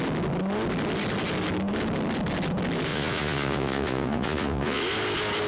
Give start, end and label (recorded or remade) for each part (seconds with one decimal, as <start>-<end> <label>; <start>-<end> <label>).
0.0-2.9 recorded; 2.9-4.8 remade; 4.8-5.5 recorded